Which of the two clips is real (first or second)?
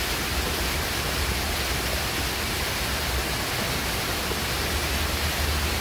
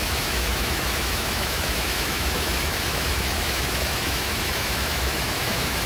first